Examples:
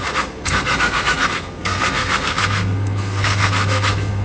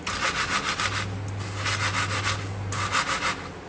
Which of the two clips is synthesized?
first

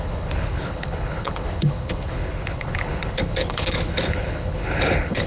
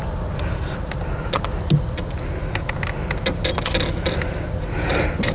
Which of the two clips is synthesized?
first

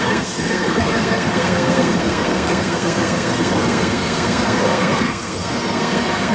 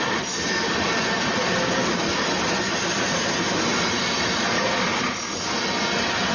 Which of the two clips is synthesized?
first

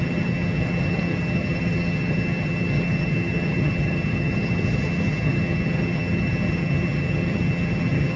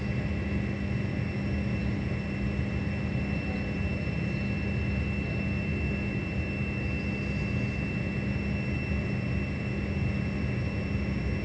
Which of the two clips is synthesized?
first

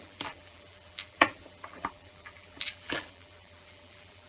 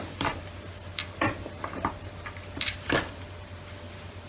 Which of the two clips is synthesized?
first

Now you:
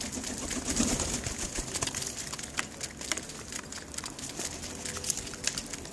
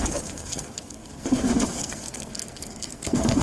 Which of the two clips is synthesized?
second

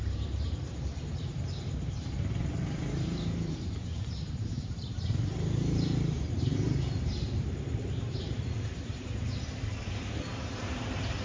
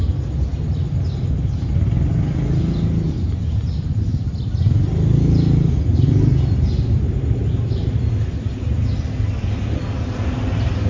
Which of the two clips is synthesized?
first